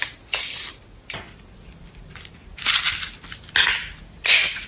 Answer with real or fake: real